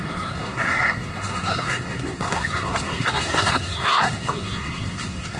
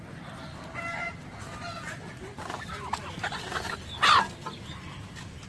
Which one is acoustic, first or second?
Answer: second